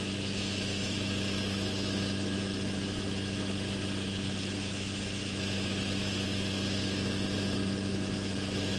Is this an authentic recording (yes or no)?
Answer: no